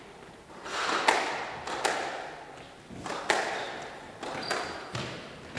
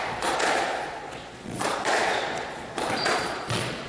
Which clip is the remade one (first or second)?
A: second